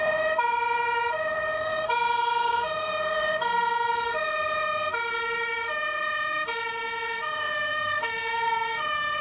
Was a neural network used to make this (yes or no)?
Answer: yes